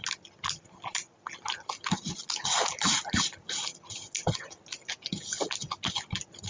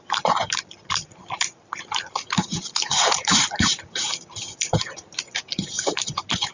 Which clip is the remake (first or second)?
second